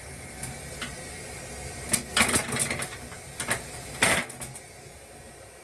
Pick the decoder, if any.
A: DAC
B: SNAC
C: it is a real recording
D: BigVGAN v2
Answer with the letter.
C